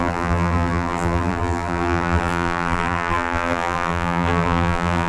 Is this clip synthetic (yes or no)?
yes